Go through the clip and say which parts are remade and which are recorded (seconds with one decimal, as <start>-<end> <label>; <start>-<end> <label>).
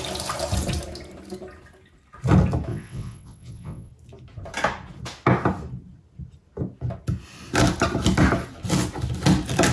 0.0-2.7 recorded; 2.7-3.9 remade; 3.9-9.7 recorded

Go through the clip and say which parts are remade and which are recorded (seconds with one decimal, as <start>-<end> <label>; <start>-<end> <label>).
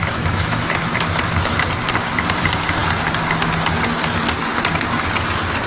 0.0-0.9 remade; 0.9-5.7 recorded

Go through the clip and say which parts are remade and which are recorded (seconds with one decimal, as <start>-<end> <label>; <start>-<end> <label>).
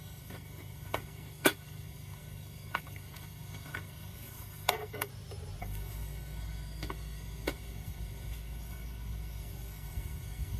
0.0-5.1 remade; 5.1-5.6 recorded; 5.6-10.6 remade